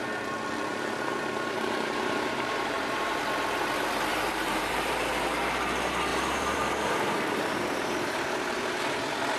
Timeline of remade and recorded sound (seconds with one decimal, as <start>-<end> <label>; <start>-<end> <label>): 0.0-0.7 recorded; 0.7-3.2 remade; 3.2-4.1 recorded; 4.1-5.1 remade; 5.1-6.1 recorded; 6.1-8.7 remade; 8.7-9.4 recorded